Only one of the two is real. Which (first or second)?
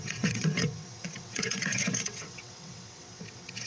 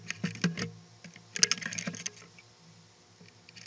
second